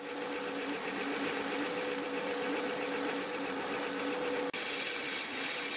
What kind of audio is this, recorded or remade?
recorded